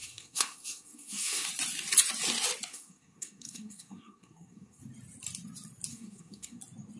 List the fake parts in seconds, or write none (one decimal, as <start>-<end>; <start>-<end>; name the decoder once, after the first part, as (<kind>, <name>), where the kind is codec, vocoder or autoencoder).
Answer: 0.0-1.5 (codec, SNAC); 2.7-4.8; 5.9-6.6